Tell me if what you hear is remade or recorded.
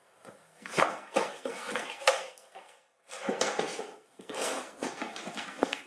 remade